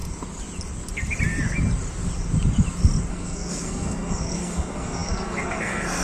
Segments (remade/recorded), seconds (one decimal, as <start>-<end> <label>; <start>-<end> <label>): 0.0-3.1 recorded; 3.1-6.0 remade